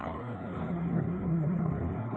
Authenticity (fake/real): fake